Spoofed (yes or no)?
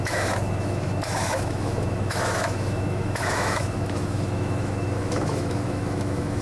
yes